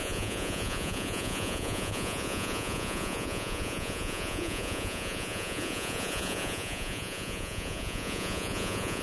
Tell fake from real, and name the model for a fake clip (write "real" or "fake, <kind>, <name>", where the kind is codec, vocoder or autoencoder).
fake, vocoder, Vocos